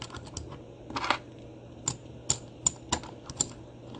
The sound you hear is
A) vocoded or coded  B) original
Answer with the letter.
B